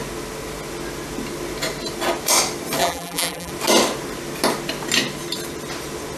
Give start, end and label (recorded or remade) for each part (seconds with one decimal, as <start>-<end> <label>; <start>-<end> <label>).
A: 0.0-2.8 recorded; 2.8-3.5 remade; 3.5-6.2 recorded